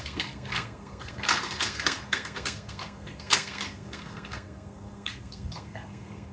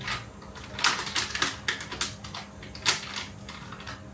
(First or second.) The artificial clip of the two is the first